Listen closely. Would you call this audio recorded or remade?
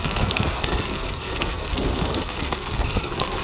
remade